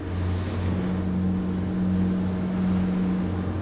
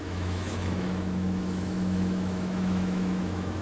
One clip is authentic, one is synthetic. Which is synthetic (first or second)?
second